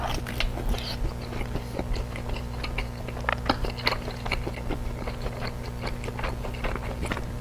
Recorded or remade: recorded